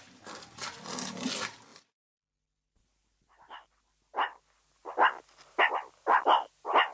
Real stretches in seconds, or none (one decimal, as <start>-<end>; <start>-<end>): 0.0-6.9